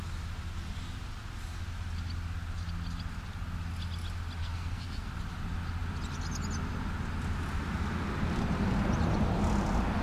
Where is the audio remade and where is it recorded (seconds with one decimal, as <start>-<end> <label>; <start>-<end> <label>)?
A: 0.0-4.4 recorded; 4.4-5.1 remade; 5.1-10.0 recorded